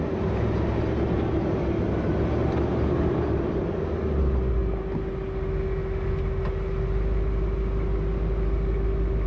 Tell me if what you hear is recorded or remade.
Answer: recorded